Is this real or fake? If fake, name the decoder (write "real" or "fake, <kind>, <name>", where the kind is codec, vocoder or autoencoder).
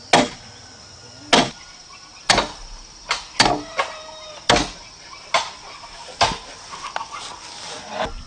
real